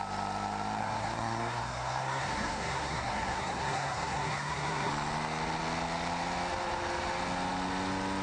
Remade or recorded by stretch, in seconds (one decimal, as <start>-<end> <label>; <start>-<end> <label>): 0.0-0.8 recorded; 0.8-4.9 remade; 4.9-8.2 recorded